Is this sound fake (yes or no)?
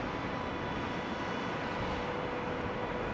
no